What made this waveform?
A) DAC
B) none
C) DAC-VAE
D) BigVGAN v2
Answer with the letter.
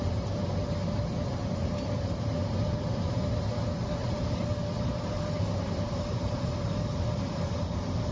B